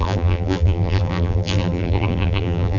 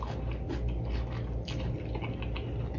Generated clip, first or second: first